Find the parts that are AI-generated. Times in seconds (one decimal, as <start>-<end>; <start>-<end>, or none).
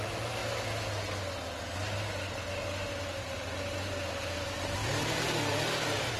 0.0-0.4; 4.1-6.2